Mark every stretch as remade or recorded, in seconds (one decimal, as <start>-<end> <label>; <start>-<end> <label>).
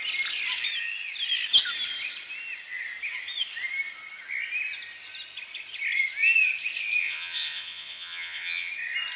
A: 0.0-7.0 recorded; 7.0-8.7 remade; 8.7-9.2 recorded